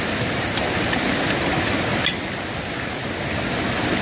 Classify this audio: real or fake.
real